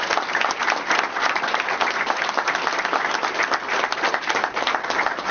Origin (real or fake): real